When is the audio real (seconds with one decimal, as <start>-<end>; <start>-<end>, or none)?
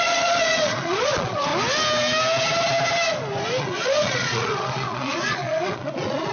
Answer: 1.5-3.6